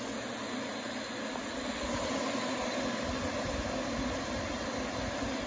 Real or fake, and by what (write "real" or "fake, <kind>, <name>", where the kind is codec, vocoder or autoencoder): real